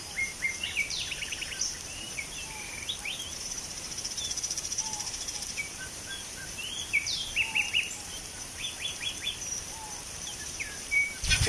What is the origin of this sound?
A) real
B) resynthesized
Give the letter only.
B